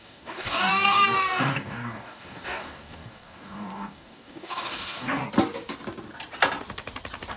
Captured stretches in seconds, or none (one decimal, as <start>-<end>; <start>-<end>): 5.2-7.4

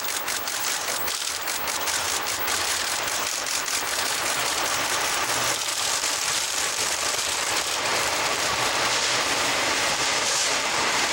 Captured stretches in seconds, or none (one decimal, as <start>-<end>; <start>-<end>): none

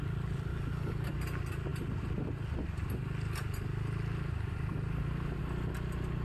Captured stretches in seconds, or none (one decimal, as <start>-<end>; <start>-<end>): 0.0-0.5; 1.2-6.2

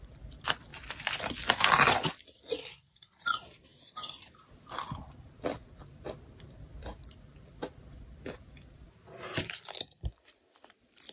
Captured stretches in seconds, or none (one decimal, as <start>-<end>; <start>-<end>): 0.7-2.4

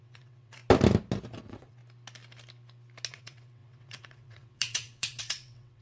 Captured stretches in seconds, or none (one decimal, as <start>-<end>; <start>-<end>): 0.6-1.4; 1.8-3.1

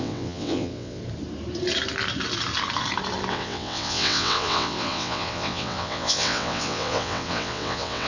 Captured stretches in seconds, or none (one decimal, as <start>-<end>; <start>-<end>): 1.0-3.3

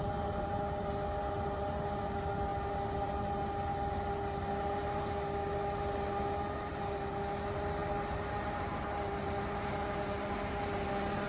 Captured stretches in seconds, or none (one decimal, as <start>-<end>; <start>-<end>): 0.0-11.3